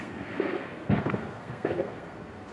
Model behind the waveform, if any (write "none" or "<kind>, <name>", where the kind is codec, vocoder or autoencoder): codec, SNAC